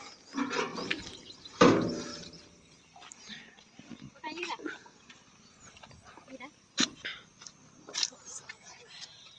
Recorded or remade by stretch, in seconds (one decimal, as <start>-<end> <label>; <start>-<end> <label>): 0.0-2.1 recorded; 2.1-5.9 remade; 5.9-9.4 recorded